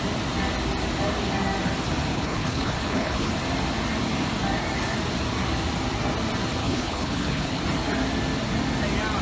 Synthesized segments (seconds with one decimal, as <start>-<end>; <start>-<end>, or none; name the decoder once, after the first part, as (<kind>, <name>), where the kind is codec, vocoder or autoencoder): 2.1-3.3 (codec, HILCodec); 6.6-7.6